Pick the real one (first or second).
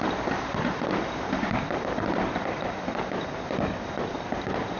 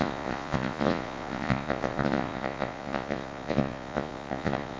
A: first